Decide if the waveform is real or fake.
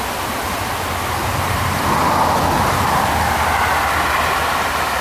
real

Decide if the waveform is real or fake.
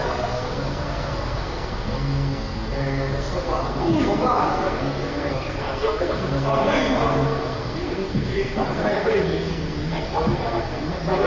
fake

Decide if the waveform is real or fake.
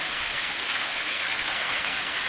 fake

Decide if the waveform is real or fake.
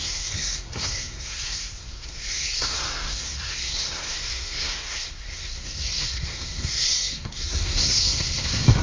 fake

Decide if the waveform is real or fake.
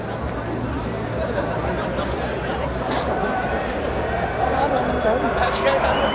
real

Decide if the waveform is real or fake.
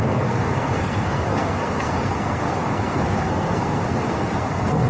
fake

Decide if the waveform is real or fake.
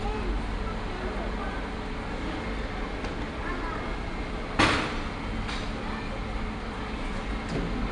real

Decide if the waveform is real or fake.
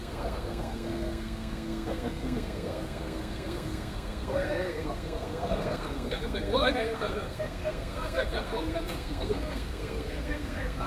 fake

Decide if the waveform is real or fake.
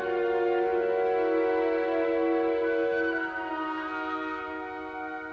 real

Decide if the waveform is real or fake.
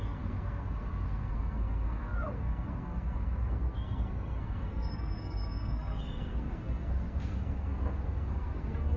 fake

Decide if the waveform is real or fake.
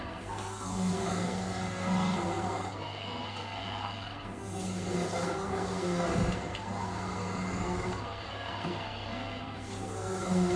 fake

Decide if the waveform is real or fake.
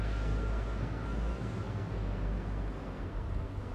fake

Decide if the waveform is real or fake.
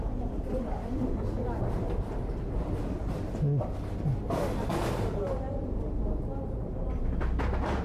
real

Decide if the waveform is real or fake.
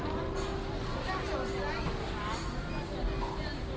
real